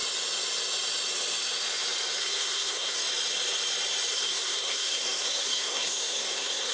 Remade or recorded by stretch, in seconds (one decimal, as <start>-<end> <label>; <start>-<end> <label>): 0.0-2.2 recorded; 2.2-3.0 remade; 3.0-4.1 recorded; 4.1-6.7 remade